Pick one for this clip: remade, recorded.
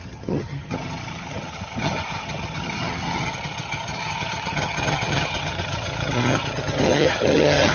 remade